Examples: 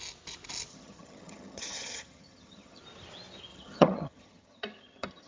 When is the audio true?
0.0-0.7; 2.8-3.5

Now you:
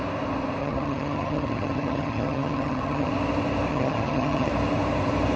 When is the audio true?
0.0-0.6; 3.1-3.7; 4.5-5.4

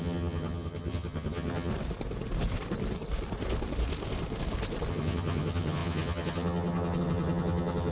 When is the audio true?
1.7-4.9

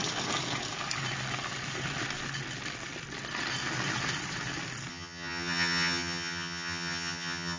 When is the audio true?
0.0-4.9

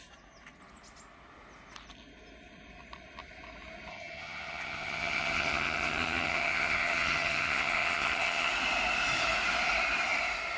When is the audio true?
0.0-3.9; 8.5-10.6

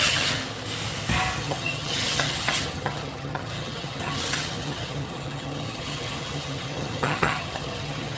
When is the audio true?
0.4-1.4